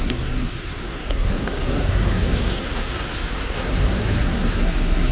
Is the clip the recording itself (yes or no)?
no